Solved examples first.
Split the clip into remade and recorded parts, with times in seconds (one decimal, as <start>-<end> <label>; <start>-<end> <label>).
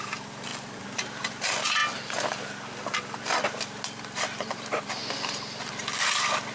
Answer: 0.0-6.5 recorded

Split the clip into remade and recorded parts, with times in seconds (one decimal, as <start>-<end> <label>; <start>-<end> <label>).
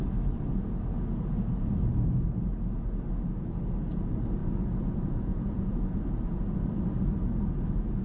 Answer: 0.0-4.4 recorded; 4.4-6.0 remade; 6.0-8.0 recorded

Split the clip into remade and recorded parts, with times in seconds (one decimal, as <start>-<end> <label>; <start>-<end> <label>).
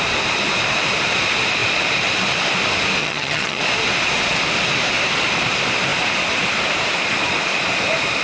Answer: 0.0-3.0 recorded; 3.0-3.6 remade; 3.6-8.2 recorded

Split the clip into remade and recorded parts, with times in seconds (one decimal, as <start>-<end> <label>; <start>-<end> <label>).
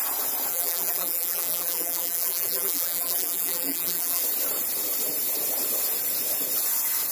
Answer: 0.0-0.5 recorded; 0.5-4.2 remade; 4.2-7.1 recorded